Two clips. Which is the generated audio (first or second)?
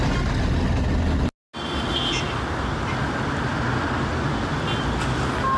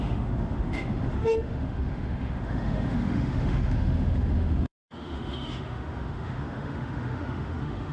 second